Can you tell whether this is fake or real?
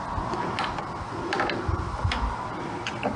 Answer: real